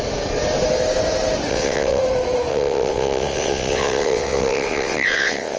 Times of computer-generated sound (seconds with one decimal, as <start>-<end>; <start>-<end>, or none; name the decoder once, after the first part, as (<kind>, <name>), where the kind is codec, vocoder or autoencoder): 1.5-2.0 (vocoder, WaveNeXt); 2.5-5.6